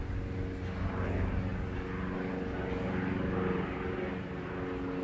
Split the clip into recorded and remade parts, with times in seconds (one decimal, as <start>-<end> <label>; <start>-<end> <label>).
0.0-5.0 recorded

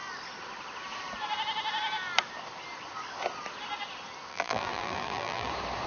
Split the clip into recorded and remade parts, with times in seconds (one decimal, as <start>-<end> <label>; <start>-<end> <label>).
0.0-4.3 recorded; 4.3-5.5 remade; 5.5-5.9 recorded

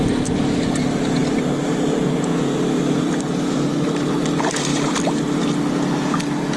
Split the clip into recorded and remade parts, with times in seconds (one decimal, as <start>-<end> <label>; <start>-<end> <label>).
0.0-4.7 recorded; 4.7-5.4 remade; 5.4-6.6 recorded

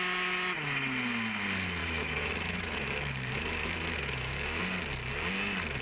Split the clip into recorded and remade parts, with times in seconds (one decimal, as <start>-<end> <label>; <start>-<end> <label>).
0.0-1.8 recorded; 1.8-4.6 remade; 4.6-5.8 recorded

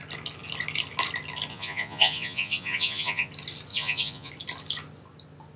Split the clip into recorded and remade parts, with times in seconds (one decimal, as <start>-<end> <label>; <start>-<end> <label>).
0.0-1.5 recorded; 1.5-3.3 remade; 3.3-3.7 recorded; 3.7-4.3 remade; 4.3-5.6 recorded

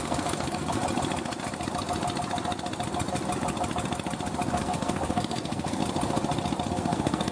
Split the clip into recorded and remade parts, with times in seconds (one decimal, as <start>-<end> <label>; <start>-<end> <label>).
0.0-0.8 remade; 0.8-4.5 recorded; 4.5-5.8 remade; 5.8-6.7 recorded; 6.7-7.3 remade

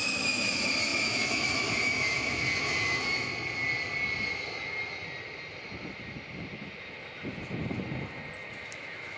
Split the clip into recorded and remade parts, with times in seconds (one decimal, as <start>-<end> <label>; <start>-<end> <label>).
0.0-3.3 remade; 3.3-8.5 recorded; 8.5-9.2 remade